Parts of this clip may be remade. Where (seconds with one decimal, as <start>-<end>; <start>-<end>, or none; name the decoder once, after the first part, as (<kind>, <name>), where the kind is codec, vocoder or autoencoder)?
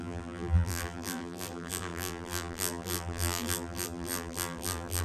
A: 0.0-5.0 (vocoder, BigVGAN v2)